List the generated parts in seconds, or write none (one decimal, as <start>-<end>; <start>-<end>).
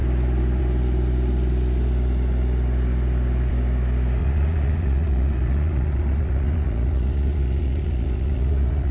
4.2-8.9